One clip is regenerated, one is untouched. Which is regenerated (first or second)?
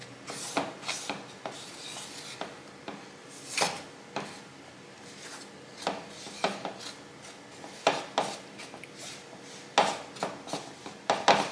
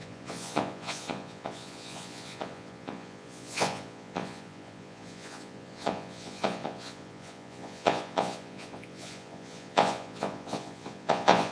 second